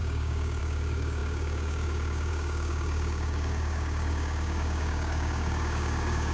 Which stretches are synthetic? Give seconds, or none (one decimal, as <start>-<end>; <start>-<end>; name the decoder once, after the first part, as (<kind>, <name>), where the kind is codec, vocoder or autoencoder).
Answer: 0.0-6.3 (codec, DAC)